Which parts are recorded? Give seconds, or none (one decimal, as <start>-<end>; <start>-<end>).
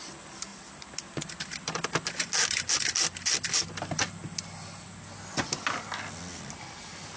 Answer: 0.0-7.2